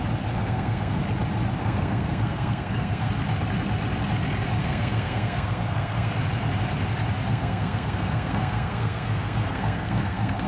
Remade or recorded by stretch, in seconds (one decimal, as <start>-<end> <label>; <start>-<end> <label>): 0.0-0.4 recorded; 0.4-1.0 remade; 1.0-1.6 recorded; 1.6-3.1 remade; 3.1-4.6 recorded; 4.6-6.1 remade; 6.1-7.3 recorded; 7.3-10.5 remade